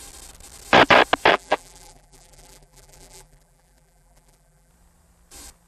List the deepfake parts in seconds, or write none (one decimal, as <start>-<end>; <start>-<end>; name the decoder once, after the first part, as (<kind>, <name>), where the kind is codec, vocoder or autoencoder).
1.3-4.7 (vocoder, BigVGAN v2)